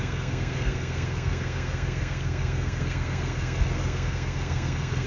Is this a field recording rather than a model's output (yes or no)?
no